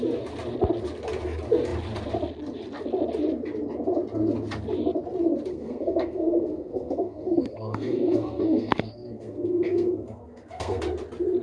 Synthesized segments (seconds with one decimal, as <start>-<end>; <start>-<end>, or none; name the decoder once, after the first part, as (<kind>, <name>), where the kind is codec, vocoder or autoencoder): 5.5-10.8 (codec, SNAC)